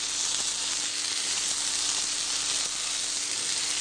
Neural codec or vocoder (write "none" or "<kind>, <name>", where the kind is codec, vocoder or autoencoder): none